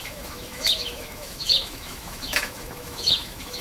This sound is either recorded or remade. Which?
remade